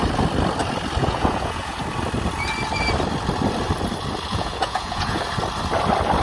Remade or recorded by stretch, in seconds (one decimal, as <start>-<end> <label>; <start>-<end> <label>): 0.0-1.0 recorded; 1.0-1.8 remade; 1.8-4.3 recorded; 4.3-5.3 remade; 5.3-6.2 recorded